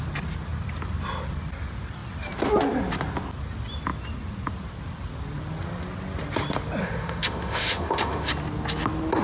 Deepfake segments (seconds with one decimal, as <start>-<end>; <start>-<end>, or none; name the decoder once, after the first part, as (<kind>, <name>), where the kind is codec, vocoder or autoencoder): 6.8-8.3 (autoencoder, DAC-VAE)